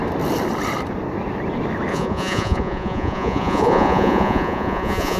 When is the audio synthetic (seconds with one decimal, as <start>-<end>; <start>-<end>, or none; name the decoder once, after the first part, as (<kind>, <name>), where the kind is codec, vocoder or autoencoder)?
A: 1.9-5.2 (vocoder, Vocos)